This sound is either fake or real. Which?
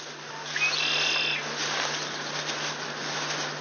real